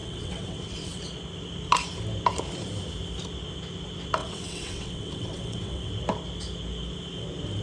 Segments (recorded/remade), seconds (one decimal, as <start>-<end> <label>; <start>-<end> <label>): 0.0-1.0 remade; 1.0-4.2 recorded; 4.2-5.9 remade; 5.9-7.6 recorded